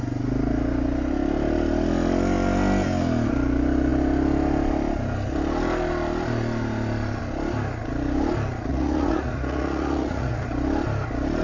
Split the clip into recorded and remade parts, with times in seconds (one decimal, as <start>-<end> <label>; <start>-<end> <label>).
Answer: 0.0-8.7 recorded; 8.7-10.4 remade; 10.4-11.4 recorded